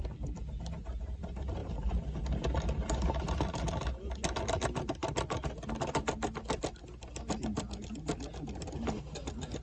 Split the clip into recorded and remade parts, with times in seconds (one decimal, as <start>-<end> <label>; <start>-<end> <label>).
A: 0.0-9.6 recorded